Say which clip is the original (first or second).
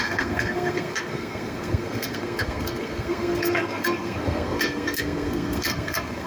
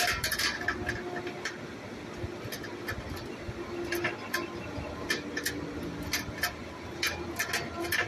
second